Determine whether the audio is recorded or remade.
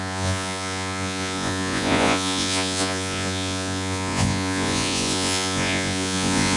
remade